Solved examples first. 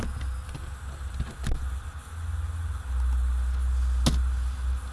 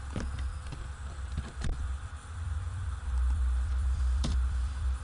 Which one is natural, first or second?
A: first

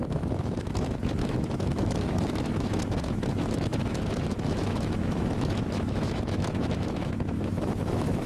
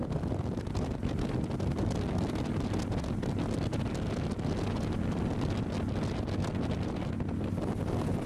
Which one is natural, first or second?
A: second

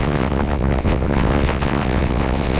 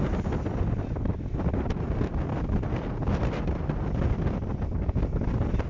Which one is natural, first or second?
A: second